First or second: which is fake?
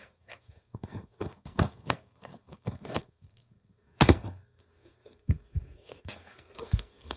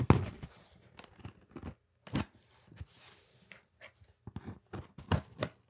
first